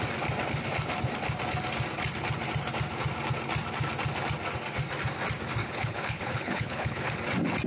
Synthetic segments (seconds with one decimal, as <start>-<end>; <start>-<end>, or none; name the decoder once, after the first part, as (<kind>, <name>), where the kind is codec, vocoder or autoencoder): 5.6-7.1 (codec, HILCodec)